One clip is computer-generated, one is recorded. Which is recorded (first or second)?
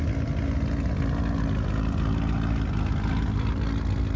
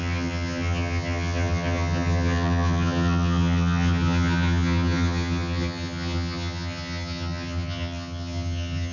first